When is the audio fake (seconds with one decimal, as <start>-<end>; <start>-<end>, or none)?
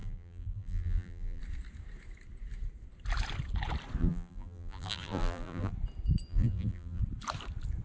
0.0-1.4; 4.0-5.7; 6.3-7.0